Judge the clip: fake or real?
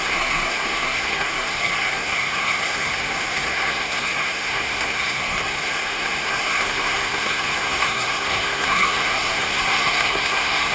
fake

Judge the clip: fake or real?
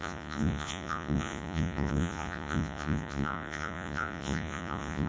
fake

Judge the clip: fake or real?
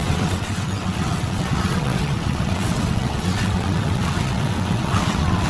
fake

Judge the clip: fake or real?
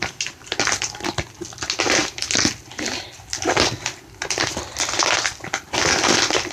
real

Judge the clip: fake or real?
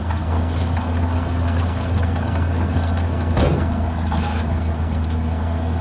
fake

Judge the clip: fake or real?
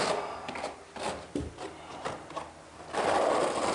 real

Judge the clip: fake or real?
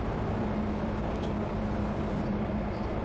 fake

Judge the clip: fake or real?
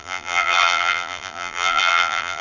fake